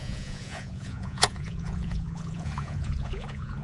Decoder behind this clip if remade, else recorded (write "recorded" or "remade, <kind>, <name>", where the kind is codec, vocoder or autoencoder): remade, vocoder, Vocos